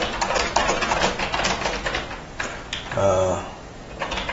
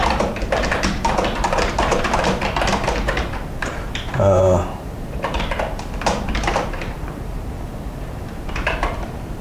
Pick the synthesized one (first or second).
second